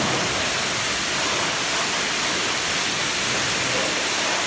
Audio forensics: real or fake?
real